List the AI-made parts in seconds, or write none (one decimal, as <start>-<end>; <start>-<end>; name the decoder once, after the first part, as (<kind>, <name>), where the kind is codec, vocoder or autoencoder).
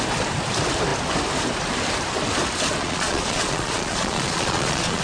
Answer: 2.8-5.0 (vocoder, Vocos)